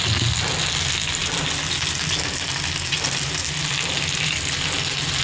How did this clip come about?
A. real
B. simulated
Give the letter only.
A